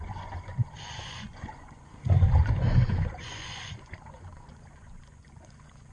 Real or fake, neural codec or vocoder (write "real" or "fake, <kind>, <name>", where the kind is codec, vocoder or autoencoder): fake, vocoder, Vocos